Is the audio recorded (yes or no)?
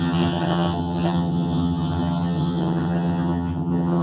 no